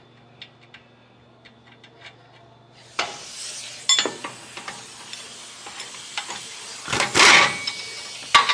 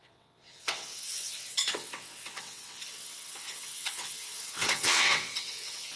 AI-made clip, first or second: second